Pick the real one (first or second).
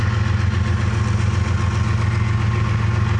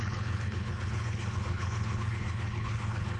first